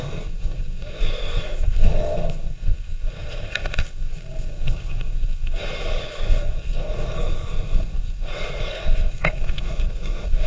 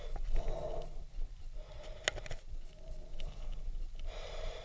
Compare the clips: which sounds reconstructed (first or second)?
first